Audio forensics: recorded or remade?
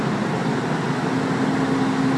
recorded